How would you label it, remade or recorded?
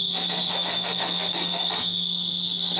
remade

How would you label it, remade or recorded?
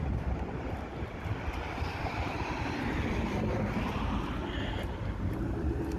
recorded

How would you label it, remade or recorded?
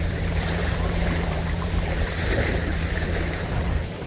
remade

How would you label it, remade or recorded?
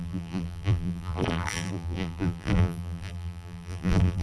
remade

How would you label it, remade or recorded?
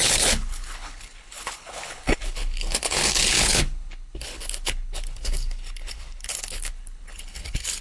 remade